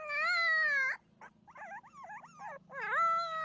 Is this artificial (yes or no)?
no